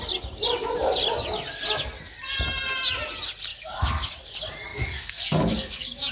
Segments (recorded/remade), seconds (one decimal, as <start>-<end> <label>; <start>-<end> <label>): 0.0-3.5 recorded; 3.5-4.1 remade; 4.1-4.7 recorded; 4.7-6.1 remade

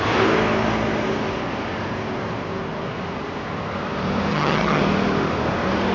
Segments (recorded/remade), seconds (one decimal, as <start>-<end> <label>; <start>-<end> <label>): 0.0-4.3 recorded; 4.3-4.8 remade; 4.8-5.9 recorded

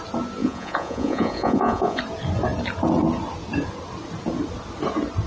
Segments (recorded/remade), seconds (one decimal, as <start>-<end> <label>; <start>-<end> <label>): 0.0-0.4 recorded; 0.4-2.0 remade; 2.0-5.3 recorded

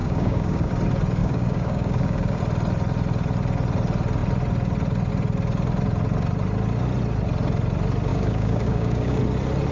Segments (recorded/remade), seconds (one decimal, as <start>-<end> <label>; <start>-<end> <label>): 0.0-0.7 remade; 0.7-1.2 recorded; 1.2-2.4 remade; 2.4-8.1 recorded; 8.1-9.2 remade; 9.2-9.7 recorded

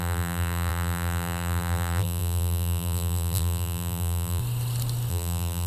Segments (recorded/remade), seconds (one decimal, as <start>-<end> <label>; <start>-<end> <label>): 0.0-4.4 remade; 4.4-5.1 recorded; 5.1-5.7 remade

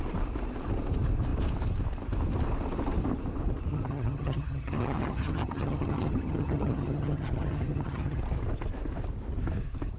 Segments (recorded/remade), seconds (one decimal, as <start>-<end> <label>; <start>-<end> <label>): 0.0-3.7 recorded; 3.7-8.2 remade; 8.2-10.0 recorded

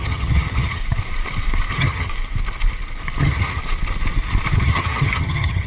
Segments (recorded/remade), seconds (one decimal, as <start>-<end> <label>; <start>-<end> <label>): 0.0-0.8 remade; 0.8-1.7 recorded; 1.7-2.1 remade; 2.1-3.2 recorded; 3.2-3.6 remade; 3.6-4.6 recorded; 4.6-5.7 remade

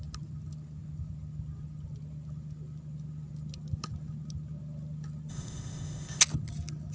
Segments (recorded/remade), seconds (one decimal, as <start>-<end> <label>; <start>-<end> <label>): 0.0-5.3 recorded; 5.3-6.2 remade; 6.2-6.9 recorded